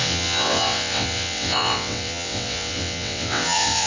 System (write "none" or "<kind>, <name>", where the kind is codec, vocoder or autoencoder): vocoder, WaveNeXt